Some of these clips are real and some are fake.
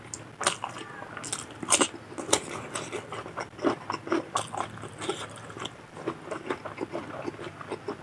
real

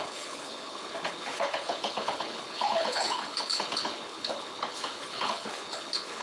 fake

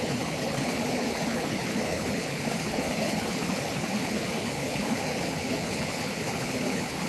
fake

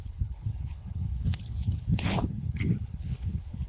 fake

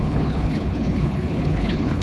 fake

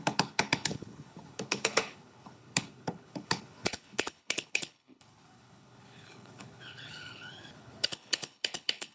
fake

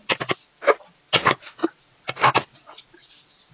real